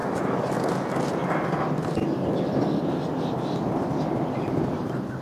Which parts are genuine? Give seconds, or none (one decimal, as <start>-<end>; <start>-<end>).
0.5-5.2